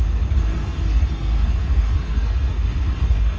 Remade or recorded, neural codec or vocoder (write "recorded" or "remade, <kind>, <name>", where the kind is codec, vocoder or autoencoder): remade, codec, SNAC